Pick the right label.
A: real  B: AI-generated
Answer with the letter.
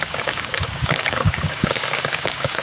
B